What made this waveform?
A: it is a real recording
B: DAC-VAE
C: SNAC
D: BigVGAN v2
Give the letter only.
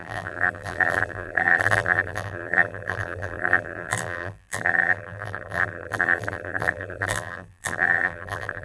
D